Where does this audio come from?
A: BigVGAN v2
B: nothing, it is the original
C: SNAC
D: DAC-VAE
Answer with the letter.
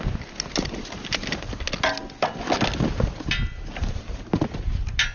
B